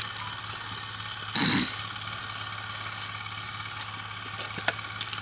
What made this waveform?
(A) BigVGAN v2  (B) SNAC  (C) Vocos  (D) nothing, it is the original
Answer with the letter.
D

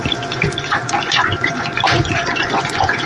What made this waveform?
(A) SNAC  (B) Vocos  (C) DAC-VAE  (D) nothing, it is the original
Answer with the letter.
B